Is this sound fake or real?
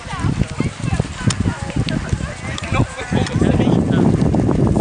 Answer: real